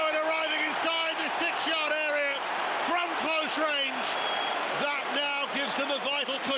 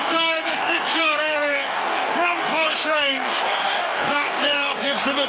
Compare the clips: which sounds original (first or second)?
first